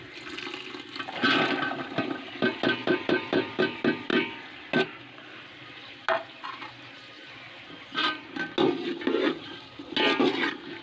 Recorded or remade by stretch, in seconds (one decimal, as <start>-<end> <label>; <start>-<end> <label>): 0.0-2.8 recorded; 2.8-3.6 remade; 3.6-8.0 recorded; 8.0-8.5 remade; 8.5-10.8 recorded